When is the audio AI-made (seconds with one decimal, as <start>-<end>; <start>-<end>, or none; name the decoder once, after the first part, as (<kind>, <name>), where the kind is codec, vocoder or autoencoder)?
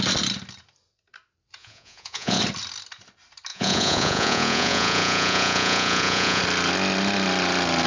1.6-2.4 (vocoder, Vocos); 3.5-6.4